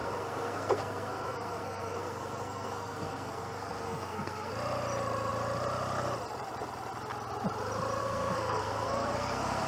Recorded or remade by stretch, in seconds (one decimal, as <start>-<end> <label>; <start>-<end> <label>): 0.0-4.5 remade; 4.5-8.0 recorded; 8.0-9.7 remade